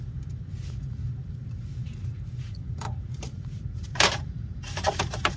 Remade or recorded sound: remade